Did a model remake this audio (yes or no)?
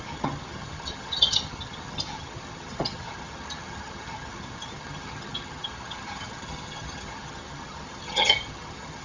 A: yes